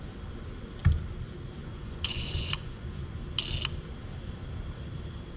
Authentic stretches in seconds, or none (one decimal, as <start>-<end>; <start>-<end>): 0.0-1.6; 3.0-5.4